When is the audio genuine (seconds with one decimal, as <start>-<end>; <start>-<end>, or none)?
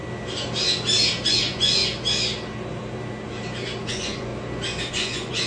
0.0-1.3; 1.8-3.9; 4.3-4.9